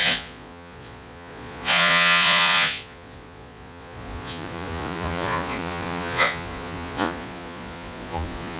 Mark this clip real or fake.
fake